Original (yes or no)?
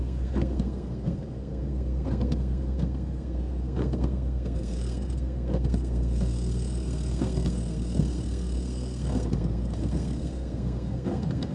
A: no